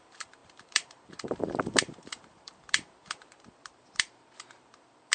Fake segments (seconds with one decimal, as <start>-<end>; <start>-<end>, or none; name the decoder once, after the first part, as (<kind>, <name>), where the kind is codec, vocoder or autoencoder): 0.0-5.1 (vocoder, BigVGAN v2)